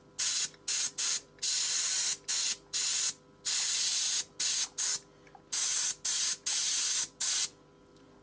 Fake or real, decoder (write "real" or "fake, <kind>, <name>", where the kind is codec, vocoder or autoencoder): real